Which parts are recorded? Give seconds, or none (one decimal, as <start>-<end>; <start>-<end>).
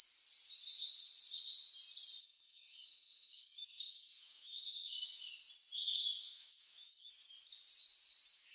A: 0.0-2.2; 5.3-6.2; 7.1-8.5